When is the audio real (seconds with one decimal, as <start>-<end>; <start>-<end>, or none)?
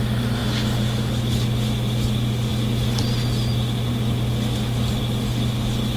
0.0-6.0